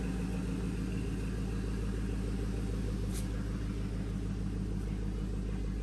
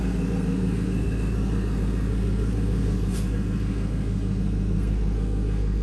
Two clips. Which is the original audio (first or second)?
first